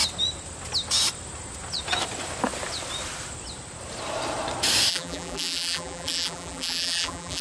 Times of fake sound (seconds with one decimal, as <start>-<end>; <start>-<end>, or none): 4.9-7.4